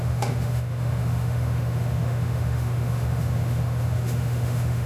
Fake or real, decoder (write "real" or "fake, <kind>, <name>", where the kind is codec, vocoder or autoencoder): fake, autoencoder, DAC-VAE